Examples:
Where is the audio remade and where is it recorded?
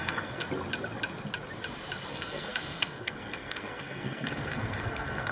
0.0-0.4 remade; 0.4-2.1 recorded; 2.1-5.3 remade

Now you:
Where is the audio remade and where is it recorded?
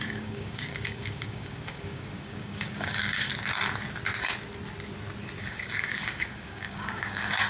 0.0-3.3 remade; 3.3-5.4 recorded; 5.4-7.5 remade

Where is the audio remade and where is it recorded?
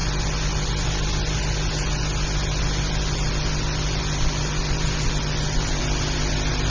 0.0-4.0 recorded; 4.0-5.8 remade; 5.8-6.7 recorded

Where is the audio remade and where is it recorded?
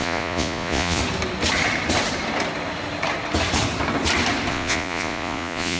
0.0-1.0 remade; 1.0-4.5 recorded; 4.5-5.8 remade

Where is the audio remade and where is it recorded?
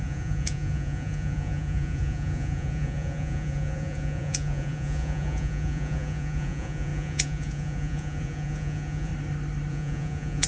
0.0-9.1 remade; 9.1-9.7 recorded; 9.7-10.5 remade